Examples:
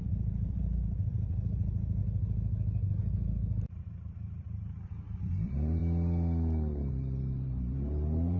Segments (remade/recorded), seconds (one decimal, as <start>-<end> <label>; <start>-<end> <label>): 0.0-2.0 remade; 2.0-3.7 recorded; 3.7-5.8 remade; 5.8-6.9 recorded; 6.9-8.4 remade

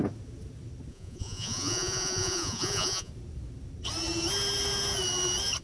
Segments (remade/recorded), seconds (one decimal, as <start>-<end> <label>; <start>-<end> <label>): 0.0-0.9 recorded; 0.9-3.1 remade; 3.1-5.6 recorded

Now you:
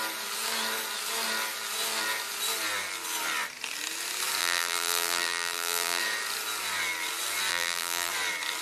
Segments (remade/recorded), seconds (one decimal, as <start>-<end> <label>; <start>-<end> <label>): 0.0-4.4 recorded; 4.4-6.0 remade; 6.0-7.5 recorded; 7.5-8.1 remade; 8.1-8.6 recorded

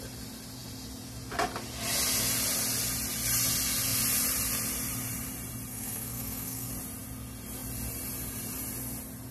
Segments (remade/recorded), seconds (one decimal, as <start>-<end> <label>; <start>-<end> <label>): 0.0-5.7 recorded; 5.7-6.7 remade; 6.7-9.3 recorded

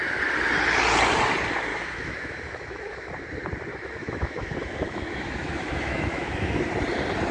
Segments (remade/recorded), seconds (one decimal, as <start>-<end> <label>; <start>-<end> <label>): 0.0-1.7 recorded; 1.7-3.1 remade; 3.1-3.7 recorded; 3.7-6.6 remade; 6.6-7.3 recorded

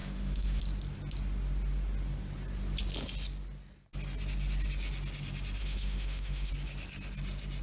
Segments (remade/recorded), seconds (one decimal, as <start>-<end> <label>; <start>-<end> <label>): 0.0-0.6 remade; 0.6-5.6 recorded; 5.6-6.5 remade; 6.5-7.6 recorded